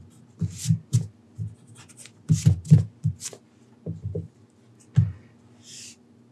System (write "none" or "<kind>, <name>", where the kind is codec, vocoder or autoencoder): none